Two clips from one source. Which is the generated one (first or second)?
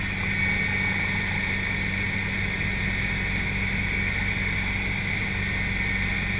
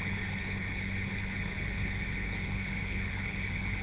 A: second